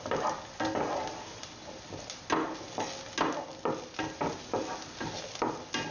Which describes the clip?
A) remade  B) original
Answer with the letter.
B